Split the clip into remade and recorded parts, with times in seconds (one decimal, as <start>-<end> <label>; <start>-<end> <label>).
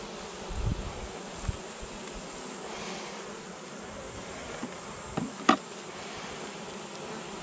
0.0-7.4 recorded